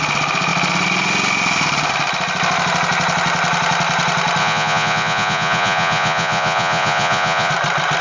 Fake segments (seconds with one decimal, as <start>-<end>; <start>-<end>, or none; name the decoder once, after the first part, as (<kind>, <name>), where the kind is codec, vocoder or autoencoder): 4.4-7.5 (vocoder, Vocos)